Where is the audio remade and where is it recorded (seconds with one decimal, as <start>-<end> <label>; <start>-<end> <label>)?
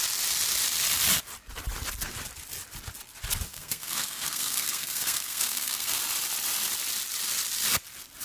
0.0-3.5 recorded; 3.5-6.0 remade; 6.0-8.2 recorded